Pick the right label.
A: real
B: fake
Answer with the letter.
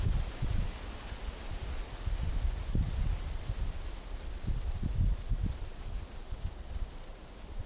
A